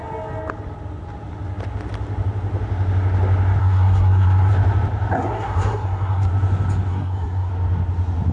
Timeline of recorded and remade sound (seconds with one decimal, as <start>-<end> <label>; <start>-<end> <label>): 0.0-3.6 recorded; 3.6-4.5 remade; 4.5-5.1 recorded; 5.1-6.3 remade; 6.3-6.9 recorded; 6.9-7.5 remade; 7.5-8.3 recorded